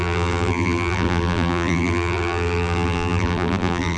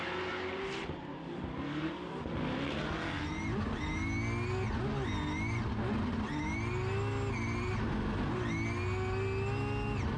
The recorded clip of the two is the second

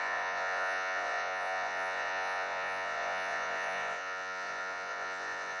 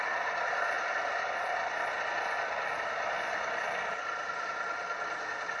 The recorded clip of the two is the second